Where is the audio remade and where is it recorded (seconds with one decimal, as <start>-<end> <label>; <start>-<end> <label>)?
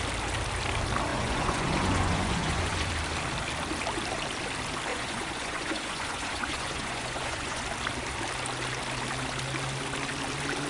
0.0-1.1 recorded; 1.1-2.9 remade; 2.9-4.9 recorded; 4.9-7.6 remade; 7.6-10.7 recorded